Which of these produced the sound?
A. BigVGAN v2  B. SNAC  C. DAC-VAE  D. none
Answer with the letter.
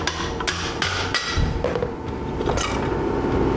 D